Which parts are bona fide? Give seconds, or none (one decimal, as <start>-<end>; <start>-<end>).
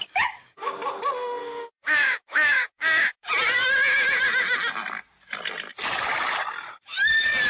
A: 1.0-1.4; 3.3-7.5